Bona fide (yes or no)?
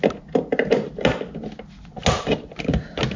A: yes